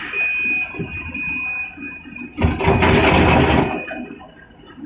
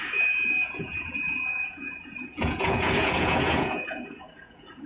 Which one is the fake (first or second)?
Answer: second